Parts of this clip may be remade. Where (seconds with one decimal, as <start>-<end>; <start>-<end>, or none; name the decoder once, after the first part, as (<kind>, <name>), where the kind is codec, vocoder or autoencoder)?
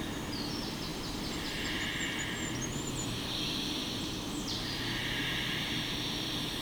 0.9-1.6 (vocoder, BigVGAN v2); 2.7-4.1